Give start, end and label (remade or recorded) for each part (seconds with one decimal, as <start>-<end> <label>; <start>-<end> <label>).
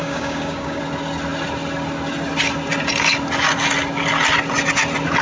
0.0-0.8 remade; 0.8-5.2 recorded